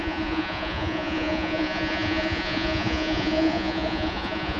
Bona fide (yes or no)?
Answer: no